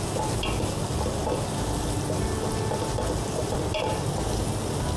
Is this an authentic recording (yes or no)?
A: yes